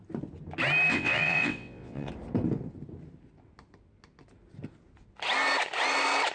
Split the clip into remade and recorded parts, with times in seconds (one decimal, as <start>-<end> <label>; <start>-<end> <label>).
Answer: 0.0-0.9 recorded; 0.9-2.1 remade; 2.1-6.3 recorded